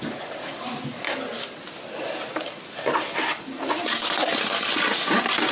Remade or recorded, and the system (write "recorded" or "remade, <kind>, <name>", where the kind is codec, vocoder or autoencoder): recorded